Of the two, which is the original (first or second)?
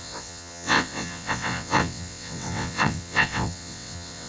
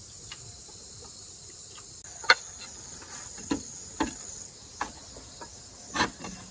second